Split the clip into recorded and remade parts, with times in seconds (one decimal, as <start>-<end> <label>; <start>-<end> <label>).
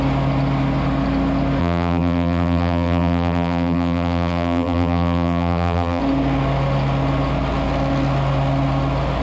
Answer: 0.0-1.6 recorded; 1.6-6.0 remade; 6.0-9.2 recorded